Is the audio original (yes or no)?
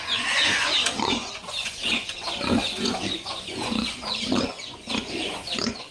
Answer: no